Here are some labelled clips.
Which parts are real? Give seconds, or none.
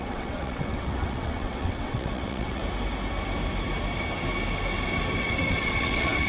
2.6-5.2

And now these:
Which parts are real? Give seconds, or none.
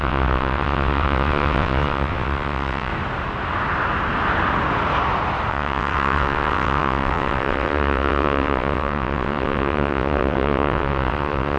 2.9-5.5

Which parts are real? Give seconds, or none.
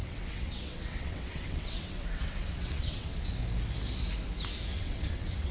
3.3-4.7